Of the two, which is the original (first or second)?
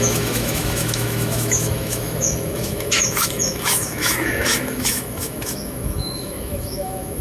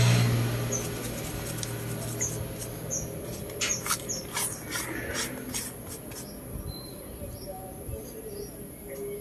second